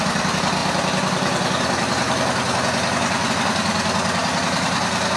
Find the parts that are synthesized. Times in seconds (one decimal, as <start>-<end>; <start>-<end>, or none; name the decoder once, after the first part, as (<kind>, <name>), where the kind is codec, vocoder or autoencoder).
none